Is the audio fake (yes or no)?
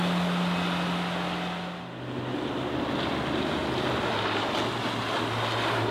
no